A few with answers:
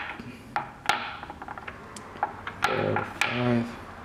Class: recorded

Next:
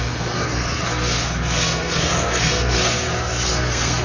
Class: remade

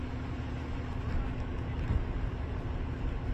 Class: recorded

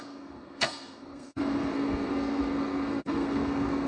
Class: remade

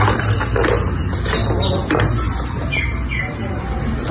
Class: recorded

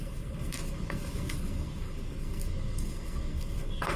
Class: remade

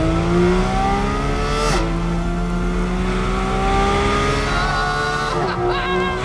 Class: recorded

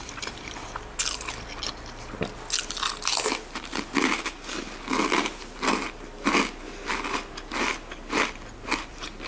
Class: recorded